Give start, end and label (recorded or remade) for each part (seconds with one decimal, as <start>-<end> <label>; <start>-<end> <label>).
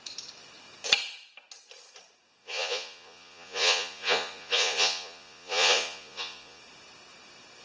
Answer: 0.0-2.4 recorded; 2.4-6.6 remade; 6.6-7.6 recorded